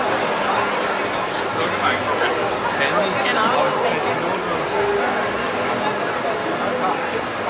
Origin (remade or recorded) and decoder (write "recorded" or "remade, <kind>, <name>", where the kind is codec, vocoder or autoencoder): recorded